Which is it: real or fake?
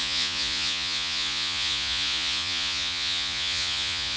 fake